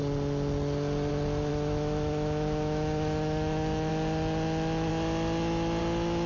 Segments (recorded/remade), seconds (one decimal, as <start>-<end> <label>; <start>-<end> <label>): 0.0-1.5 recorded; 1.5-3.9 remade; 3.9-6.3 recorded